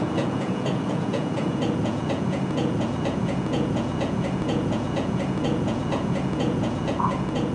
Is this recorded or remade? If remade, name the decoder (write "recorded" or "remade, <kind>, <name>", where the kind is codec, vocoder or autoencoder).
remade, vocoder, Vocos